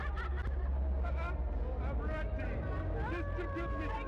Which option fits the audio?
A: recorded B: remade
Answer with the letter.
A